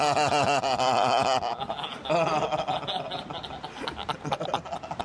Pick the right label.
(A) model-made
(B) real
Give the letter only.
B